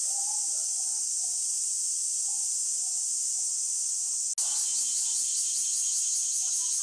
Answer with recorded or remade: recorded